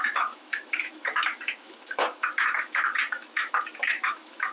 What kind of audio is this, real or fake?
fake